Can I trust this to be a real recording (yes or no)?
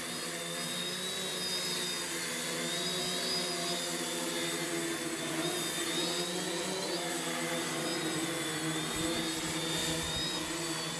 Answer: yes